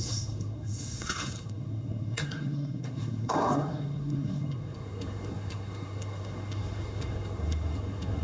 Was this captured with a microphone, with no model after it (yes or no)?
no